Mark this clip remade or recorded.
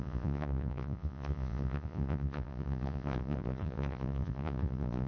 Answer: remade